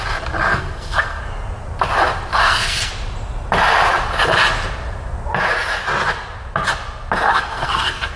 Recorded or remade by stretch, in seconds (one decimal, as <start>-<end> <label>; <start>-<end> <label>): 0.0-0.5 recorded; 0.5-1.2 remade; 1.2-2.3 recorded; 2.3-2.9 remade; 2.9-7.3 recorded; 7.3-8.2 remade